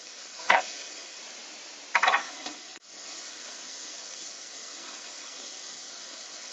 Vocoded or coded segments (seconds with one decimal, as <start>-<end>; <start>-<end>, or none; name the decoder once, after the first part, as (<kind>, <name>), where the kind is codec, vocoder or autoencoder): 0.0-1.2 (codec, SNAC); 2.2-6.5